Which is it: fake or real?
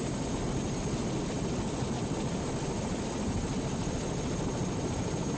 real